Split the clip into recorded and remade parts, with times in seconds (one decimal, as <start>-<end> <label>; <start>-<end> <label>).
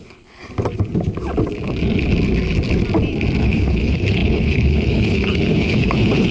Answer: 0.0-0.4 remade; 0.4-3.4 recorded; 3.4-6.3 remade